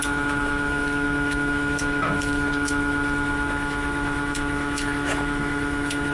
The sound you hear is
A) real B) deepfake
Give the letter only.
B